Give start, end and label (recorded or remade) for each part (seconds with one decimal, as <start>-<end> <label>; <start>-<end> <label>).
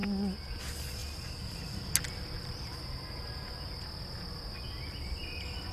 0.0-5.7 recorded